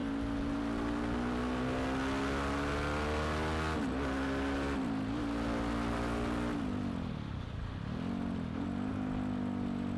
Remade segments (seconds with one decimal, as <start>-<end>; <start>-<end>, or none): none

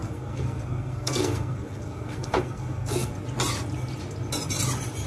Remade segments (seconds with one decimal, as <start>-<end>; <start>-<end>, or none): 0.0-3.1

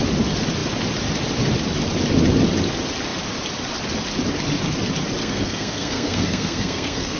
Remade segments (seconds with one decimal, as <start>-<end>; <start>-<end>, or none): 5.2-7.2

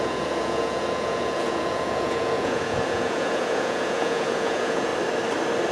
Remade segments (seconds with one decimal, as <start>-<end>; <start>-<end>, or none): 0.0-4.9

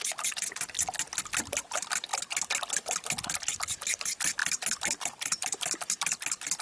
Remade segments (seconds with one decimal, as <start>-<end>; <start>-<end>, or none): 4.4-6.6

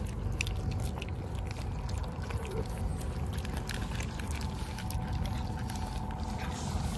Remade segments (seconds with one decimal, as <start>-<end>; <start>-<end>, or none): none